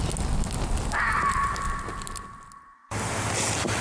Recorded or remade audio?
recorded